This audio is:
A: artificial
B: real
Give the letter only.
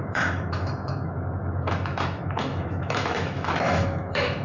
A